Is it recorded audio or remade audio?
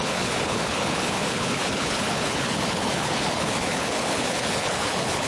remade